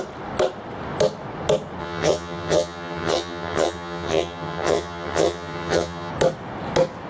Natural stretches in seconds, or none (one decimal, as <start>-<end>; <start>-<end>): 0.0-1.8; 6.1-7.1